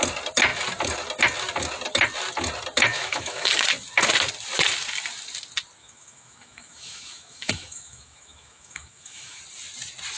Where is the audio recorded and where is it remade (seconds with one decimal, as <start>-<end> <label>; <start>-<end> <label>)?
0.0-2.9 recorded; 2.9-3.7 remade; 3.7-5.8 recorded; 5.8-9.4 remade; 9.4-10.2 recorded